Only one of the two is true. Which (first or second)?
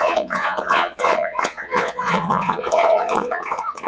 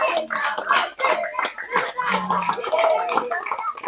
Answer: second